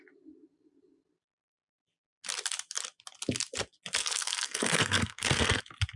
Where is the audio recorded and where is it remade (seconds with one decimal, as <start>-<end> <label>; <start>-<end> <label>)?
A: 0.0-4.0 recorded; 4.0-5.6 remade; 5.6-6.0 recorded